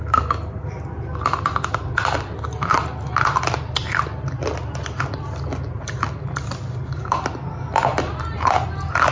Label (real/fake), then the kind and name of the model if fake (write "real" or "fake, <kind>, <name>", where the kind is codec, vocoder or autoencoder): real